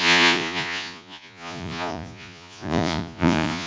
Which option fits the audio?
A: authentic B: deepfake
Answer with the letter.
B